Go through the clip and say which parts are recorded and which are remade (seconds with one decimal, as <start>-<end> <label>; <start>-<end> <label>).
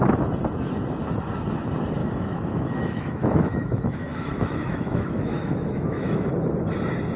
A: 0.0-2.0 recorded; 2.0-6.3 remade; 6.3-7.2 recorded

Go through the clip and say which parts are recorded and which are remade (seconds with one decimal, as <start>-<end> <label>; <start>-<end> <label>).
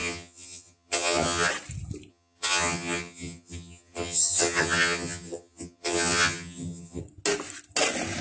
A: 0.0-1.5 remade; 1.5-2.1 recorded; 2.1-7.0 remade; 7.0-8.2 recorded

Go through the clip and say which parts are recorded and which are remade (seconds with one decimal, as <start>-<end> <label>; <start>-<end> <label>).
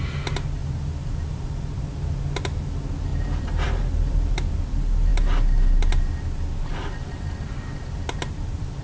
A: 0.0-0.6 recorded; 0.6-2.1 remade; 2.1-3.1 recorded; 3.1-4.6 remade; 4.6-8.8 recorded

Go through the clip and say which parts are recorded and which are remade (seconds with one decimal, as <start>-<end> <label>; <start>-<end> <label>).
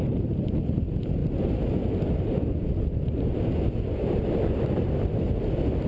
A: 0.0-5.9 recorded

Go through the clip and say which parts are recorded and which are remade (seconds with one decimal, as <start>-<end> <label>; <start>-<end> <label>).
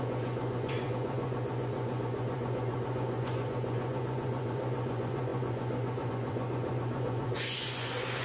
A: 0.0-8.2 remade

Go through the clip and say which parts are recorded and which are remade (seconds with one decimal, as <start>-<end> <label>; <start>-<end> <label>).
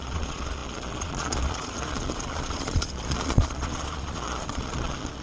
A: 0.0-5.2 remade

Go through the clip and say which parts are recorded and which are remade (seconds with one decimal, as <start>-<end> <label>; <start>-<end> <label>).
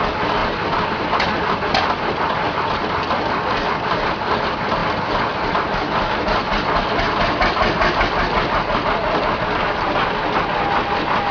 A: 0.0-0.4 recorded; 0.4-1.3 remade; 1.3-11.3 recorded